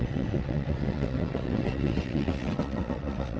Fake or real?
fake